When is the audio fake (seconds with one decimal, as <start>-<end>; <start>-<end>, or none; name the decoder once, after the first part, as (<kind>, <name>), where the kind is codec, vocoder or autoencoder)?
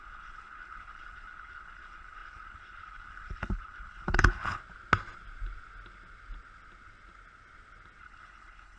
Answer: 0.0-4.6 (codec, HILCodec); 8.0-8.8